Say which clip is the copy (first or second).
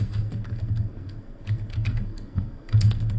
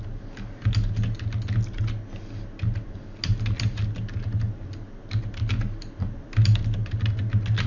first